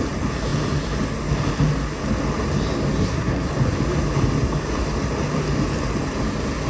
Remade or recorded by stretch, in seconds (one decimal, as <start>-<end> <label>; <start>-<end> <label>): 0.0-3.0 recorded; 3.0-3.5 remade; 3.5-6.7 recorded